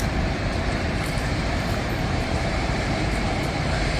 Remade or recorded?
remade